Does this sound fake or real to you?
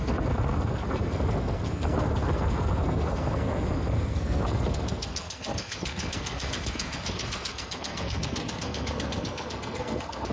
fake